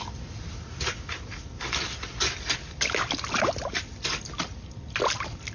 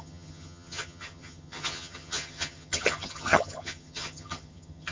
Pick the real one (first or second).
first